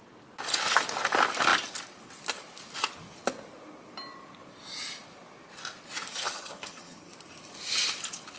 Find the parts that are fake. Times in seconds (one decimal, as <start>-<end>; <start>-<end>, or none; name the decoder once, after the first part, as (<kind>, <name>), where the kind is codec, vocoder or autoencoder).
6.1-7.1 (vocoder, HiFi-GAN)